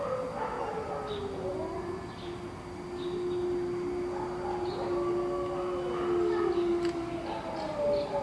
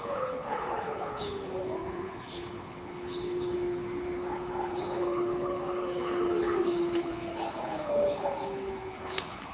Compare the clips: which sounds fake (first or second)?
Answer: second